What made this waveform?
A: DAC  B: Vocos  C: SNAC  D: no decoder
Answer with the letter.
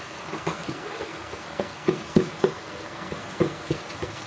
C